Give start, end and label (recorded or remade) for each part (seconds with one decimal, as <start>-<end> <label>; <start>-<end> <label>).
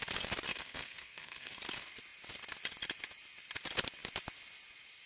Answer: 0.0-0.5 recorded; 0.5-1.6 remade; 1.6-5.1 recorded